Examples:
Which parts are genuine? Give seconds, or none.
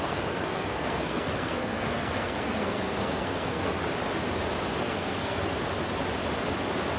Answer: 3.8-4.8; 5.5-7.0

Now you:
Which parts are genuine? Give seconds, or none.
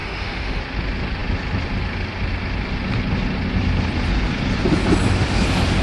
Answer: 0.6-5.8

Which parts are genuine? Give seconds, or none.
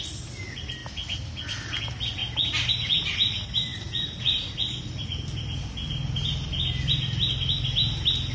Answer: 0.0-8.3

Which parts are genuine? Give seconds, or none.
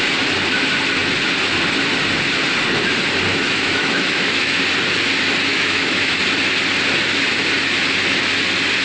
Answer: 0.0-3.3; 4.6-5.5; 6.2-8.8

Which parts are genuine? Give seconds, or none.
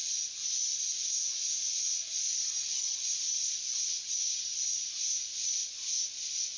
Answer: 0.0-6.6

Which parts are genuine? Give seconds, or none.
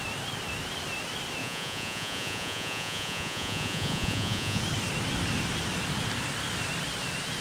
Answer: 0.0-1.4; 4.6-7.4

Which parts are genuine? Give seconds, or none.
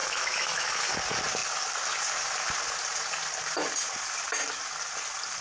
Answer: 0.8-5.4